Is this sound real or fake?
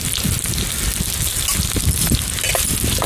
real